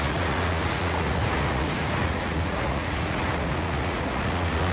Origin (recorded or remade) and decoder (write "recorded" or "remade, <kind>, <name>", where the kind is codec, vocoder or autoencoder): remade, vocoder, Vocos